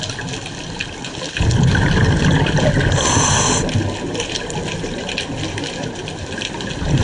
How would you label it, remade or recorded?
recorded